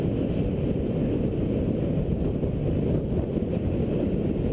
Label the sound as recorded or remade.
recorded